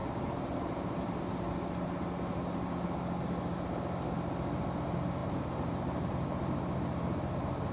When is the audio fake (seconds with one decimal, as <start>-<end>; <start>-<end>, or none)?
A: 0.0-1.0; 5.2-7.7

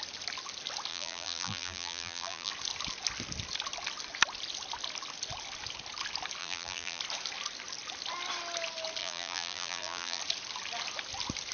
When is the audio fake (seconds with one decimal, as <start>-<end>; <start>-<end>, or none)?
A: 0.9-2.5; 6.4-7.0; 9.0-10.2

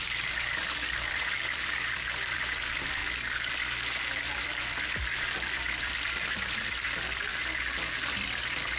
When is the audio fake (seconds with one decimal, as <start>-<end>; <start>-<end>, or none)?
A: 0.0-3.0; 4.0-7.3; 8.1-8.8

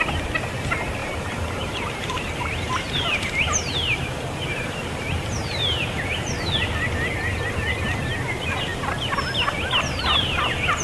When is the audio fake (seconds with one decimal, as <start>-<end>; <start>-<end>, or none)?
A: 1.0-6.2